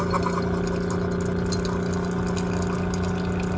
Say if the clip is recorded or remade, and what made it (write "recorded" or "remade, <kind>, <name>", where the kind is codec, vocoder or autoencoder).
recorded